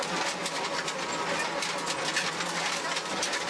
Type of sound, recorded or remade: recorded